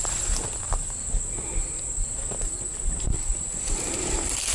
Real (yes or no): yes